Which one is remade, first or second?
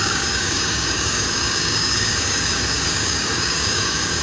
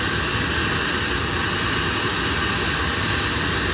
first